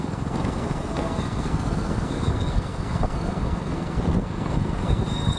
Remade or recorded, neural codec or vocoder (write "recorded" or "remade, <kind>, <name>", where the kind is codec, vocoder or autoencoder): remade, codec, SNAC